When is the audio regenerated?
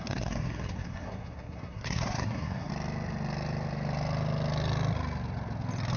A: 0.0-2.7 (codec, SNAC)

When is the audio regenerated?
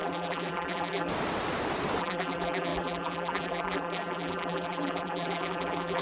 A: 0.0-1.1 (vocoder, BigVGAN v2); 2.0-6.0